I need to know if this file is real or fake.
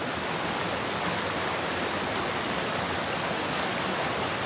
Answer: real